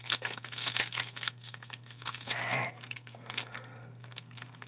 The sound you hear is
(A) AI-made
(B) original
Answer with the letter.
A